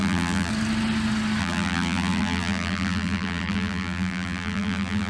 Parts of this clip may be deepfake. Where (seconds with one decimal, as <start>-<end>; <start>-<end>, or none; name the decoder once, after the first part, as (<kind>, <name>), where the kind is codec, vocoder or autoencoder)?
0.0-0.5 (vocoder, BigVGAN v2); 1.4-5.1